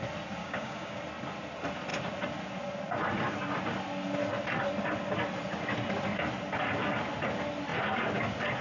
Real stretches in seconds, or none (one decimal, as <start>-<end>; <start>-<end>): 0.0-0.4; 1.0-8.6